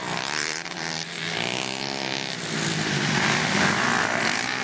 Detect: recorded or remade remade